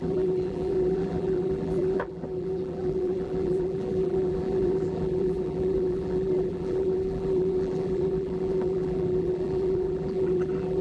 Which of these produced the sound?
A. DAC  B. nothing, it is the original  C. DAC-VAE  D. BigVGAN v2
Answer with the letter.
D